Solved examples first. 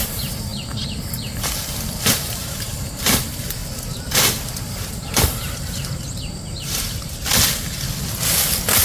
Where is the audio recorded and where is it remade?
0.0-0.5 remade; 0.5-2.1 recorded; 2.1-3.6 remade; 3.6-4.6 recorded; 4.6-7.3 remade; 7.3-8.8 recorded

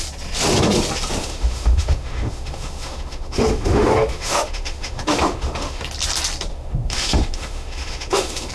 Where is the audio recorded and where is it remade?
0.0-1.2 recorded; 1.2-5.8 remade; 5.8-6.5 recorded; 6.5-8.5 remade